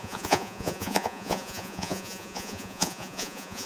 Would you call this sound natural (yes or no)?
no